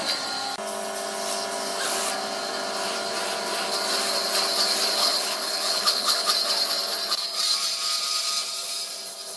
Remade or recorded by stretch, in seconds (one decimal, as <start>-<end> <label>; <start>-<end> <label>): 0.0-5.0 recorded; 5.0-6.3 remade; 6.3-9.4 recorded